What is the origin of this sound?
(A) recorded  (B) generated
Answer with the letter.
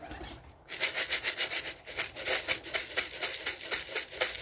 A